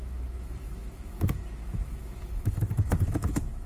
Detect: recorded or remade remade